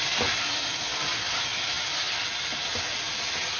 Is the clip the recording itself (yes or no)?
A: no